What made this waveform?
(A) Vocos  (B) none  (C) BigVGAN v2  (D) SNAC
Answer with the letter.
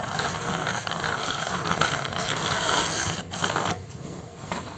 D